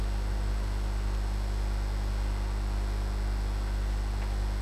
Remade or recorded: recorded